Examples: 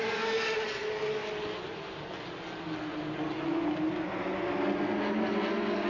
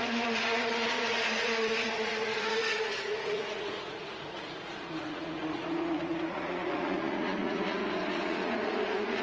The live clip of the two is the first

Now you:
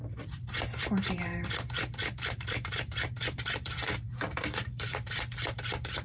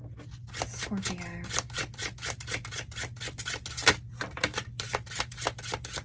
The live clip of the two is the second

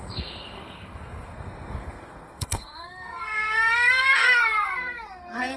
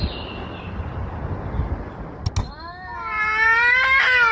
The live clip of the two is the second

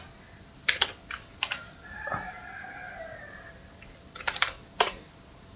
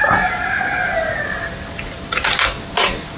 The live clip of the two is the second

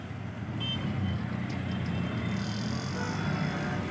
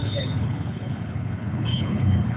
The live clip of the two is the first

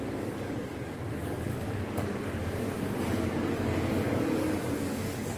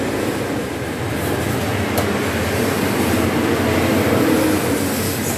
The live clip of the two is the second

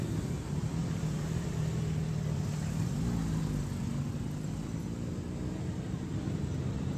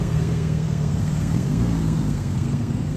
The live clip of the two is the first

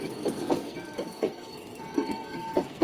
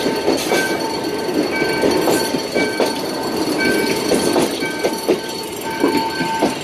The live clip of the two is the second